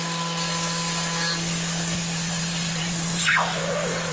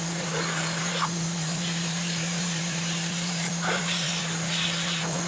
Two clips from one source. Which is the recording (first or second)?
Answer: first